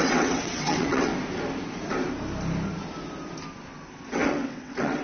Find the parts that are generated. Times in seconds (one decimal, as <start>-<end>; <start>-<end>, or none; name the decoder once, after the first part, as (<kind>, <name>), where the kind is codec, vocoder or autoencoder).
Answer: 0.0-1.1 (vocoder, WaveNeXt); 4.1-5.0